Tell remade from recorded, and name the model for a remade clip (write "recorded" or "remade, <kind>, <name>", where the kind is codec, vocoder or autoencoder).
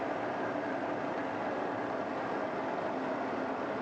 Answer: recorded